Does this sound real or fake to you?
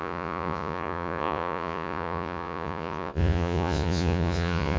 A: fake